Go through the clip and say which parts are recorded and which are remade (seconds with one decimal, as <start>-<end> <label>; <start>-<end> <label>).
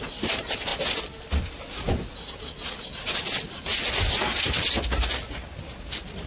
0.0-6.3 recorded